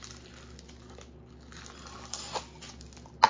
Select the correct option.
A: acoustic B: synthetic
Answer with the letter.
A